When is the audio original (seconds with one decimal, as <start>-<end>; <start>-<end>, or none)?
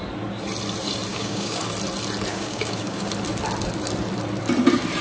0.0-1.1; 1.6-2.3; 3.1-5.0